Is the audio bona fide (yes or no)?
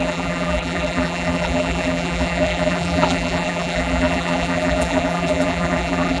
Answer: no